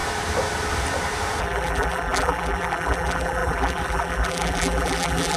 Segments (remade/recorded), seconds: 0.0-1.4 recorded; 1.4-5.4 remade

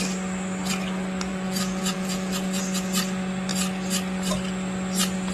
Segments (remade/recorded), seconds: 0.0-1.3 recorded; 1.3-2.6 remade; 2.6-5.3 recorded

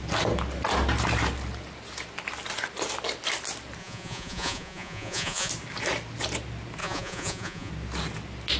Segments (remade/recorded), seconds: 0.0-3.8 recorded; 3.8-5.5 remade; 5.5-6.8 recorded; 6.8-7.7 remade; 7.7-8.6 recorded

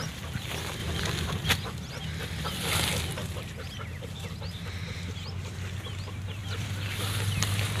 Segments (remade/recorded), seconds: 0.0-0.8 recorded; 0.8-1.5 remade; 1.5-6.4 recorded; 6.4-7.8 remade

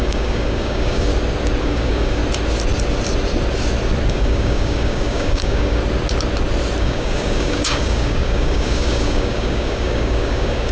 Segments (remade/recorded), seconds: 0.0-1.1 remade; 1.1-1.6 recorded; 1.6-2.2 remade; 2.2-4.1 recorded; 4.1-5.8 remade; 5.8-6.8 recorded; 6.8-10.7 remade

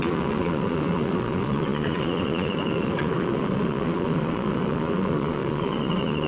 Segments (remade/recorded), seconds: 0.0-6.3 remade